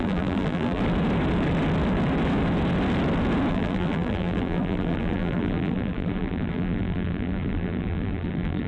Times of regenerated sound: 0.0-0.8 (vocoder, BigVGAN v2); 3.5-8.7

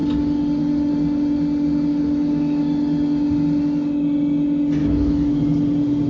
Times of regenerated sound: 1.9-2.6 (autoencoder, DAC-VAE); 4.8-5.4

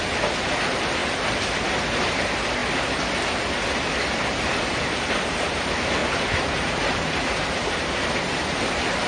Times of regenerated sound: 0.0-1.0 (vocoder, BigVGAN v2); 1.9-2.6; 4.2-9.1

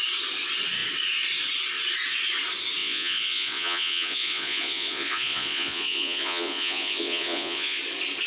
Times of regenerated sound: 2.8-7.8 (vocoder, Vocos)